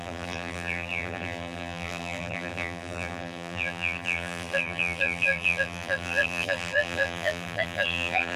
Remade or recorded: remade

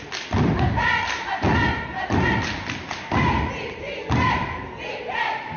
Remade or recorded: recorded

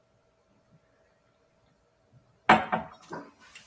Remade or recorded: recorded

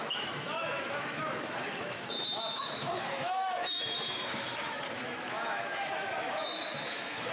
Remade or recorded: remade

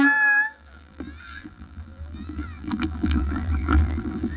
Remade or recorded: remade